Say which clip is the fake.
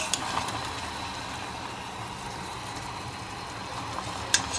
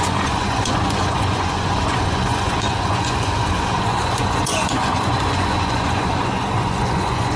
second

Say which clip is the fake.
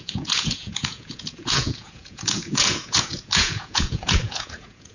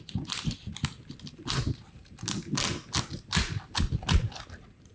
first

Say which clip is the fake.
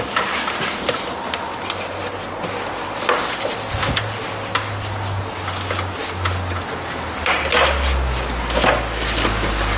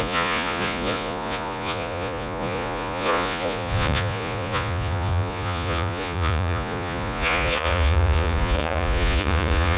second